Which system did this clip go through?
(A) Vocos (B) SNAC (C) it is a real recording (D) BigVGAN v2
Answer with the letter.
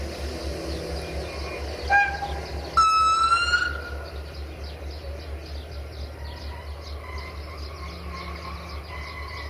C